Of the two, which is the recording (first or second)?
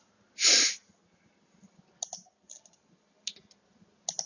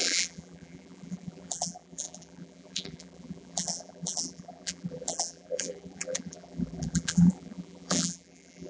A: first